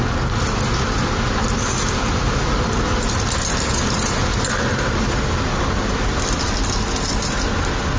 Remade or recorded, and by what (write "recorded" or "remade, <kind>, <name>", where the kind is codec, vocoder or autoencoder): recorded